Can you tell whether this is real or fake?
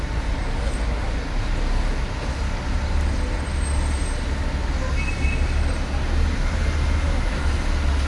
real